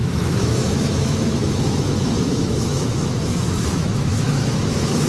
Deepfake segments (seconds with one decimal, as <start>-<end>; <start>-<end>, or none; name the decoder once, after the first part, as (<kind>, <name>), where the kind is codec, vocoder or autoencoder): 0.0-5.1 (autoencoder, DAC-VAE)